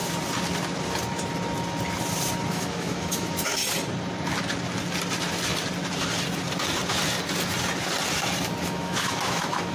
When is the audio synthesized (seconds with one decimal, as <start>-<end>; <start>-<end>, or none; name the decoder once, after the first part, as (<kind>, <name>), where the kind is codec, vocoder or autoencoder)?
2.5-3.6 (autoencoder, DAC-VAE); 8.6-9.7